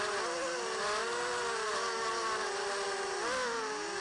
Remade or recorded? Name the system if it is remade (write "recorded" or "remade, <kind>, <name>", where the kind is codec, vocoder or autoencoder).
recorded